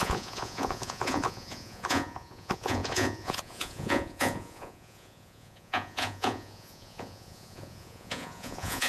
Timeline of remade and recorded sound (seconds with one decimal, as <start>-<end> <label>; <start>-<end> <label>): 0.0-8.9 remade